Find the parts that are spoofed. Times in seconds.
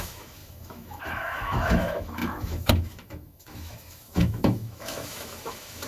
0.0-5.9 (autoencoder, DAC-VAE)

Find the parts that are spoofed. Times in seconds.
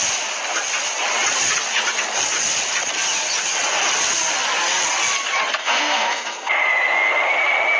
5.6-6.5 (codec, SNAC)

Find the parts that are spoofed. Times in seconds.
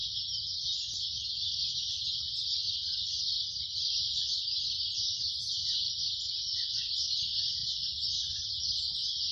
none